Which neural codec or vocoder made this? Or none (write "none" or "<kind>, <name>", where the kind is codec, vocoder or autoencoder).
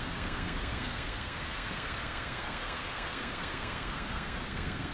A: codec, SNAC